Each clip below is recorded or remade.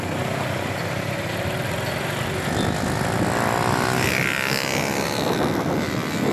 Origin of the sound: remade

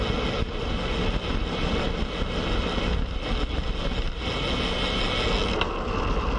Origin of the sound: recorded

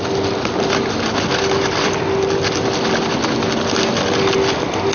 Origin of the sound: recorded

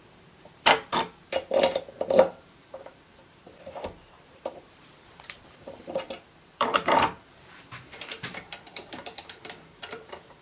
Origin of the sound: remade